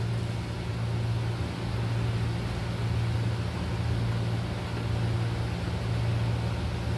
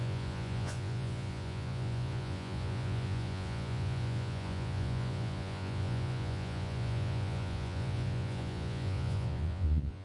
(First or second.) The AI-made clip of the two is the second